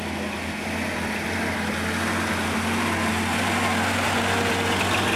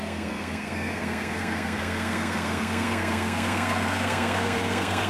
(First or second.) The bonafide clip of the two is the first